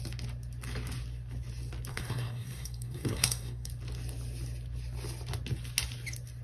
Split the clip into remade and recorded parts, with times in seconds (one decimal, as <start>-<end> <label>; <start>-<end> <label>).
0.0-1.9 recorded; 1.9-3.7 remade; 3.7-6.4 recorded